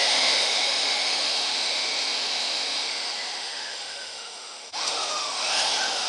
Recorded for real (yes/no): no